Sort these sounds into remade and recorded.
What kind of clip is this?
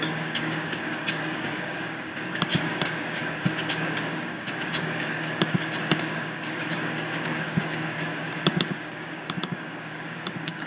remade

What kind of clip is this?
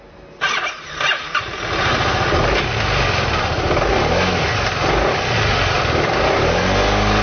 recorded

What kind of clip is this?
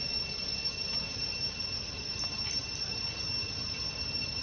recorded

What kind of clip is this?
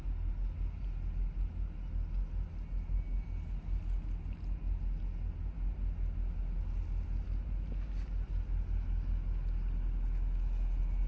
recorded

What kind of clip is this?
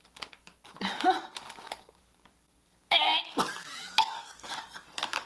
remade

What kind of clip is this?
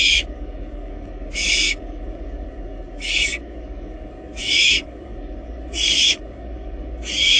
remade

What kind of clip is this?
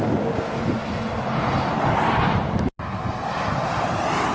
recorded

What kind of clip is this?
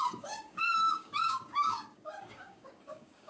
remade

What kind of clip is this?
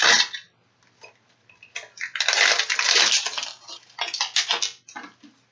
recorded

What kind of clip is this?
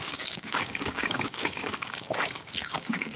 remade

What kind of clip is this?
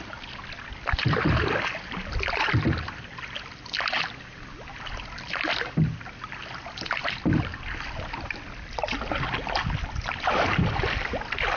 recorded